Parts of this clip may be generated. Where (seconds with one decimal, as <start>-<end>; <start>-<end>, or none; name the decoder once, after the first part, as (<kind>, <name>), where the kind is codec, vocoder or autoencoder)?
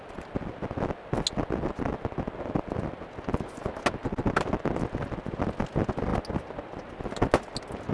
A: none